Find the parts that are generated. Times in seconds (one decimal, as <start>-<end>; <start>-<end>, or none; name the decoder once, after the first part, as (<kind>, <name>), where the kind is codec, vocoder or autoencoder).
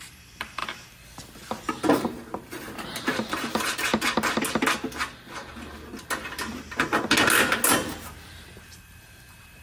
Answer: 0.0-0.6 (vocoder, BigVGAN v2); 1.7-3.9; 8.1-9.6